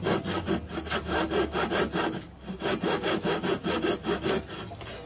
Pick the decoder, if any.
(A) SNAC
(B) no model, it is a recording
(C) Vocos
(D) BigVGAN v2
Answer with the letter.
B